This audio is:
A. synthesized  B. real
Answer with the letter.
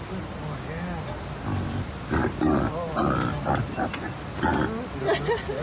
B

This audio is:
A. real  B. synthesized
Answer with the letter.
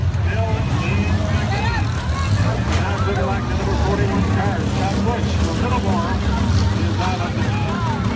A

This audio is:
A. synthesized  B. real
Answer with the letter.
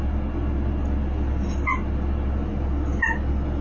B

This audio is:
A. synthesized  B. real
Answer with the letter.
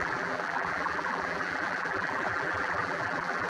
A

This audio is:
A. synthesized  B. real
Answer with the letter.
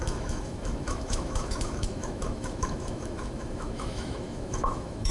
A